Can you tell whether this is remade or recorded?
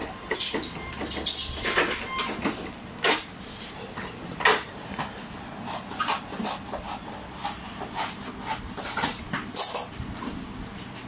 recorded